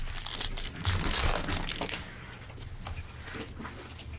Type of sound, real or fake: real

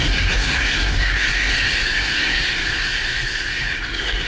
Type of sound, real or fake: fake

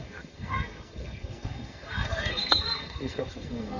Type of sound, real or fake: fake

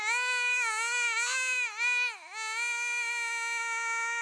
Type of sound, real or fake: real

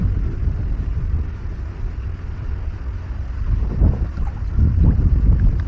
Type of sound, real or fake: real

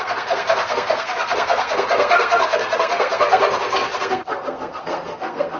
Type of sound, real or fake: fake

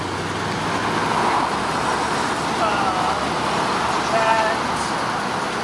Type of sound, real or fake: real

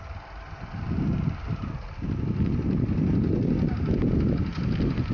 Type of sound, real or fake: real